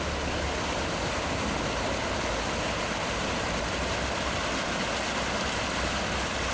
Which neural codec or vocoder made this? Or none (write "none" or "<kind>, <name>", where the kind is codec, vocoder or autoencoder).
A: none